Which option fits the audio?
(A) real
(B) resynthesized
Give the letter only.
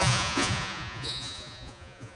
B